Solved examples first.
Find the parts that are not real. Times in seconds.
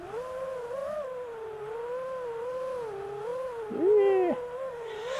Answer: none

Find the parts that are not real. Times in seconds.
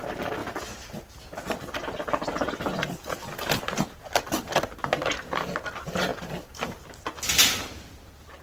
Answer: none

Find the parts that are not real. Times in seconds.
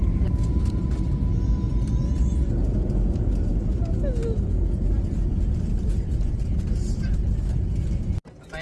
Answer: 0.0-0.8 (vocoder, BigVGAN v2)